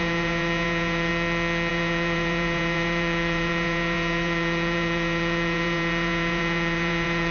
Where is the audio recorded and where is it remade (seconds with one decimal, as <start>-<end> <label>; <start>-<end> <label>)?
0.0-1.1 remade; 1.1-1.7 recorded; 1.7-7.3 remade